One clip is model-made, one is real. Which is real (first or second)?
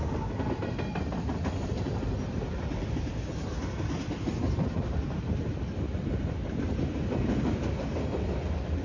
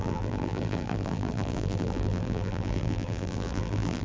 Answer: first